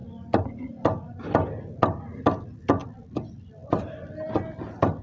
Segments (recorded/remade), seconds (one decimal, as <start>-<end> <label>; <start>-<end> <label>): 0.0-5.0 recorded